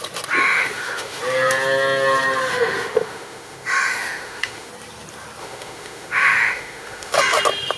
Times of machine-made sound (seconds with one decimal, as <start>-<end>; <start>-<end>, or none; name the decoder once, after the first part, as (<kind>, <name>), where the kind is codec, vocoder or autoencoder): 0.4-1.2 (autoencoder, DAC-VAE); 2.4-4.7; 5.4-7.2